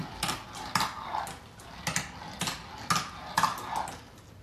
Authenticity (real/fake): real